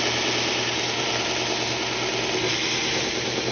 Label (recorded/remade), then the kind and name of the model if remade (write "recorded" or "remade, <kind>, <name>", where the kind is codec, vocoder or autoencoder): recorded